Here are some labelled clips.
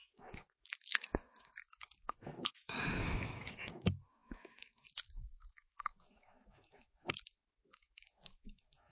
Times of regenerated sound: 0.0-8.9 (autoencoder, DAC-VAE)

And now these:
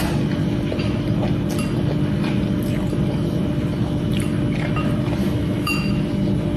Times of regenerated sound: 5.2-5.9 (autoencoder, DAC-VAE)

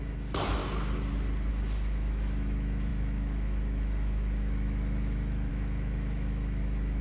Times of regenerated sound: 0.0-0.6 (autoencoder, DAC-VAE); 1.5-7.0

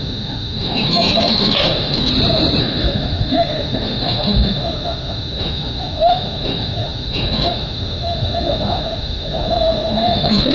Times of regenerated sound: 0.0-2.1 (autoencoder, DAC-VAE); 2.6-10.5

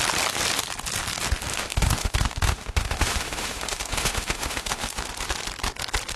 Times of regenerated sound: 1.5-5.1 (autoencoder, DAC-VAE)

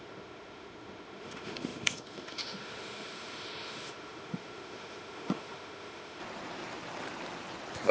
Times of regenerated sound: 0.0-6.2 (autoencoder, DAC-VAE)

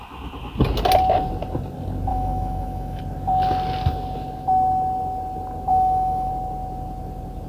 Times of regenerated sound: 2.1-3.0 (autoencoder, DAC-VAE); 5.7-6.3